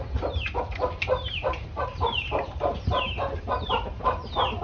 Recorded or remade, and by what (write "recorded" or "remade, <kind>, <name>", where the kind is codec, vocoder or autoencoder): remade, vocoder, BigVGAN v2